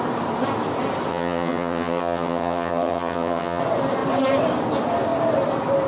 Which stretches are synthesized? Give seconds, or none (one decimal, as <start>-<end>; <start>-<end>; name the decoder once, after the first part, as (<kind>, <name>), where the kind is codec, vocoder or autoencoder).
1.1-3.6 (vocoder, HiFi-GAN)